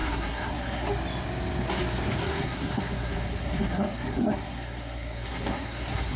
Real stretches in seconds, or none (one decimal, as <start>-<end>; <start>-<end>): 0.9-2.2